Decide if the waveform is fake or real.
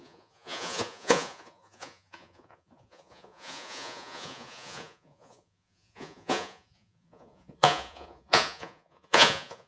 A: fake